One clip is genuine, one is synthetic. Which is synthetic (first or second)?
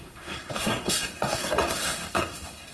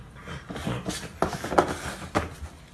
first